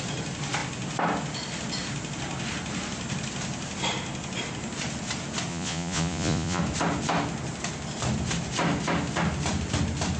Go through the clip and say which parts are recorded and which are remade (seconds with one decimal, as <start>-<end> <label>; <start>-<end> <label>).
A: 0.0-5.5 recorded; 5.5-6.6 remade; 6.6-10.2 recorded